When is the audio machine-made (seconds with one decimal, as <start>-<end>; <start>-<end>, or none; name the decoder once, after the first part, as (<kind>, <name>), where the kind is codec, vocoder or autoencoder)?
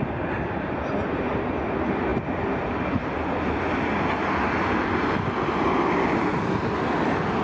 none